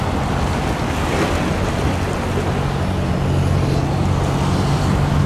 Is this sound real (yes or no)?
yes